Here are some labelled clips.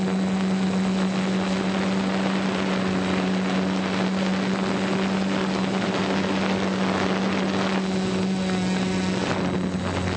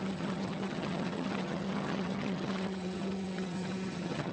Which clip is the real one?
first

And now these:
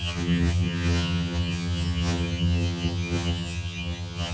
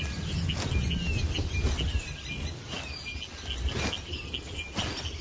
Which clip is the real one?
second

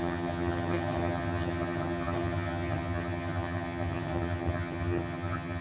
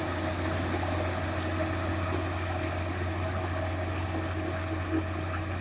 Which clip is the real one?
second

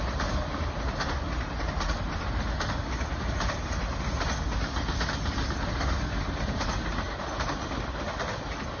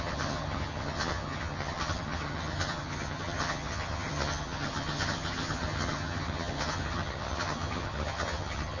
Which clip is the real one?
first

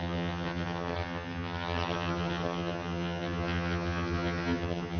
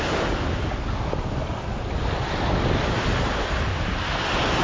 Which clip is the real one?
second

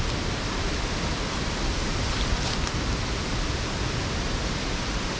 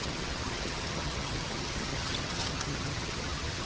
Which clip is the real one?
first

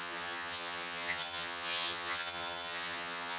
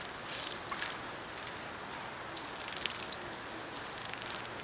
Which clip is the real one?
second